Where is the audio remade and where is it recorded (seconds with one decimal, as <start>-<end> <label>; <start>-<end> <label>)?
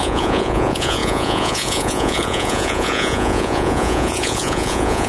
0.0-5.1 remade